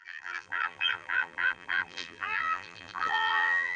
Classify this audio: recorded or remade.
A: remade